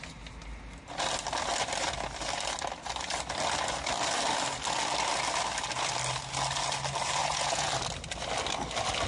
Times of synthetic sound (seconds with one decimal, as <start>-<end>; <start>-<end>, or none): 7.2-7.7